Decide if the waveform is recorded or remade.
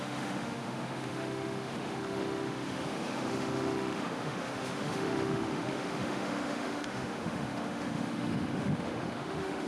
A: remade